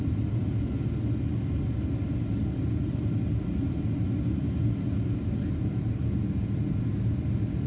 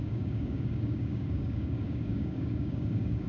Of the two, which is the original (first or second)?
first